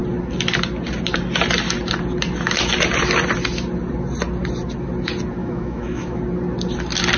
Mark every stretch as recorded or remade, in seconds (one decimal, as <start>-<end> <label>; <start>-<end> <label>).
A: 0.0-5.4 recorded; 5.4-6.2 remade; 6.2-7.2 recorded